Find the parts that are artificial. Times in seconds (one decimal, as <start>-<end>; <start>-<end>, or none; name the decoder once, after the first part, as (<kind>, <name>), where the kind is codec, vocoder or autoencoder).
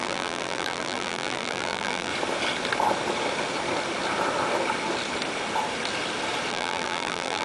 0.0-2.1 (vocoder, BigVGAN v2); 6.5-7.4